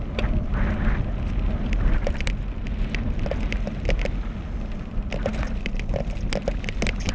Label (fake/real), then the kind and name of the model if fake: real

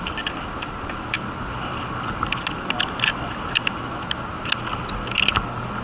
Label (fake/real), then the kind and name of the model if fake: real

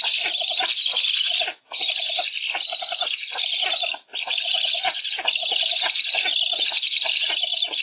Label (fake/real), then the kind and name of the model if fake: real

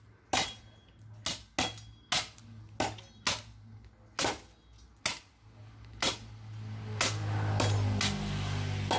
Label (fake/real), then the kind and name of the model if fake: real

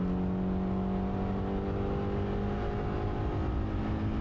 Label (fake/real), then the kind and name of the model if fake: real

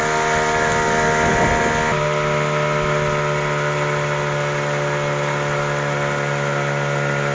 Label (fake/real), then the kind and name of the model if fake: real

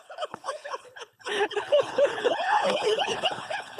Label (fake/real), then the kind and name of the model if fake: fake, codec, HILCodec